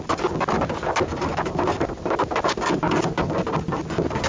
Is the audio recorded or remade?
recorded